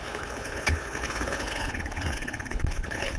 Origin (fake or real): fake